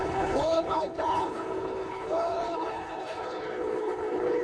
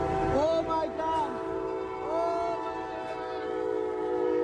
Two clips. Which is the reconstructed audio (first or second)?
first